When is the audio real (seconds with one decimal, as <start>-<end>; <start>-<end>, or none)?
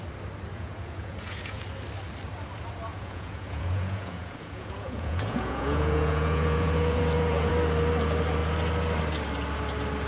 0.0-0.5; 1.6-2.9; 7.5-10.1